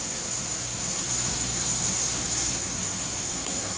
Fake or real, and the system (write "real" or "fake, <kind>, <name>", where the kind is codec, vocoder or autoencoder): fake, codec, SNAC